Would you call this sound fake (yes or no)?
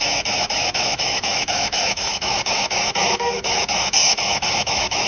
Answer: yes